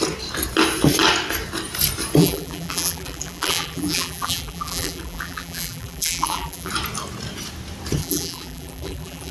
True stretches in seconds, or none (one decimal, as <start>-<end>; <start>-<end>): 0.0-2.2; 6.7-8.0